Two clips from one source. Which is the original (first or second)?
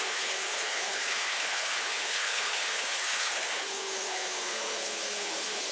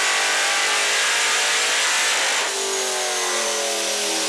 second